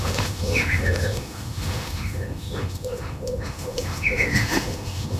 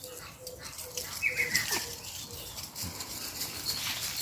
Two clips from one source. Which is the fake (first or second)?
first